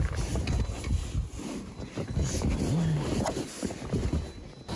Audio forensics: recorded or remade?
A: recorded